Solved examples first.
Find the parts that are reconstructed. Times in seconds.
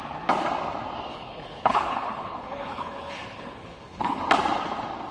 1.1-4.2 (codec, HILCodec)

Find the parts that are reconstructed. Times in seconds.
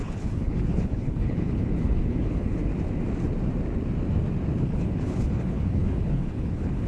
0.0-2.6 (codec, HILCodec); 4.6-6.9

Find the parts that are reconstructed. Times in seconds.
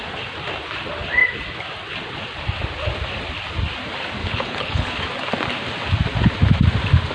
4.2-4.9 (codec, HILCodec)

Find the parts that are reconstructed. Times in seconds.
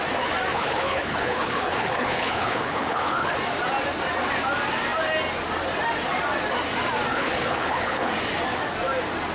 0.5-3.3 (codec, HILCodec); 7.1-8.1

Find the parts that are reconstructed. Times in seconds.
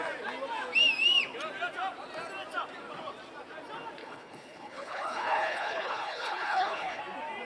4.0-7.0 (codec, HILCodec)